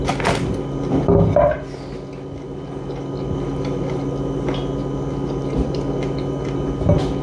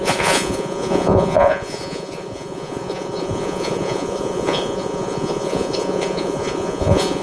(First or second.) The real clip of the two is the first